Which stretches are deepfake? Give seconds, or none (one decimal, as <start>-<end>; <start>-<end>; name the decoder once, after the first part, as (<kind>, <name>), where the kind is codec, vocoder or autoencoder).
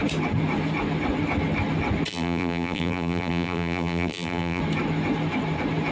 2.1-4.6 (vocoder, BigVGAN v2)